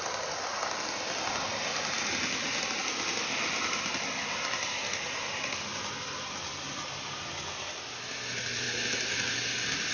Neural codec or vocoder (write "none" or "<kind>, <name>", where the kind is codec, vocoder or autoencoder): none